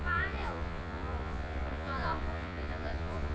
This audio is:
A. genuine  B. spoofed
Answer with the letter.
B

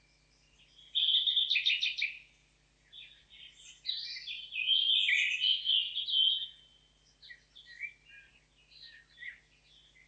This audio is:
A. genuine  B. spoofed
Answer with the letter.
A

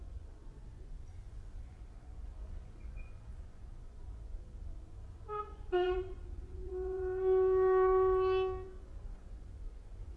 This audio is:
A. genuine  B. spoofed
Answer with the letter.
B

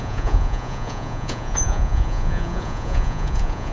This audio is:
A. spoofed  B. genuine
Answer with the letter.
A